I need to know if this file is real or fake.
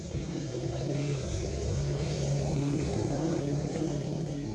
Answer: fake